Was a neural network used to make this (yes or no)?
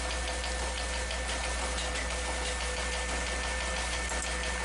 no